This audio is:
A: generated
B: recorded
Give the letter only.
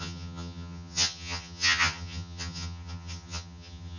A